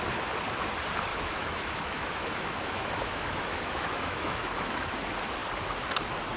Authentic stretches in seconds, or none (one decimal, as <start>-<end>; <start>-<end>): 0.0-1.1; 4.9-6.4